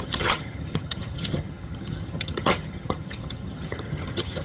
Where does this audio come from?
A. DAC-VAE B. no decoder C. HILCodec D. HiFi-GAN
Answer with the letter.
D